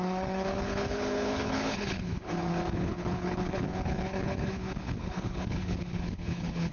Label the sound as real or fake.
fake